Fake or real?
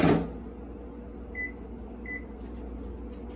real